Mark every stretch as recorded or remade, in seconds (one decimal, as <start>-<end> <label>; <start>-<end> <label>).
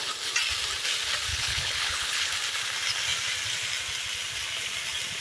0.0-1.3 recorded; 1.3-2.3 remade; 2.3-5.2 recorded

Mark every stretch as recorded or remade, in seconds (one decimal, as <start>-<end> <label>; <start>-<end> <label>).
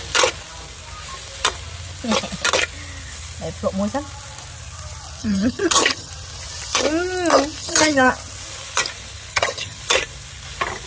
0.0-5.2 recorded; 5.2-6.1 remade; 6.1-7.6 recorded; 7.6-8.1 remade; 8.1-9.3 recorded; 9.3-9.8 remade; 9.8-10.9 recorded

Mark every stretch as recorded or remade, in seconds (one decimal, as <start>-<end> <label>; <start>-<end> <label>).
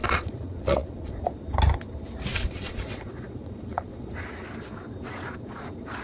0.0-1.2 remade; 1.2-2.3 recorded; 2.3-4.1 remade; 4.1-6.0 recorded